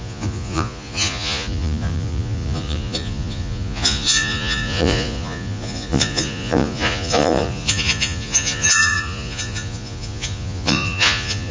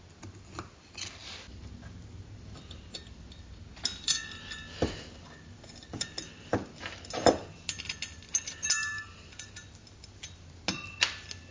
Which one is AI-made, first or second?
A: first